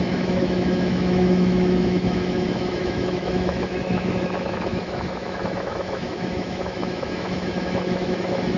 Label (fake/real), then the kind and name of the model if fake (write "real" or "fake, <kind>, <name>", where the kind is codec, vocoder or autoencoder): fake, autoencoder, DAC-VAE